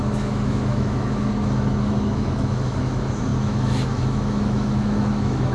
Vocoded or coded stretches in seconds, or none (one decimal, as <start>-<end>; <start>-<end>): 0.0-5.5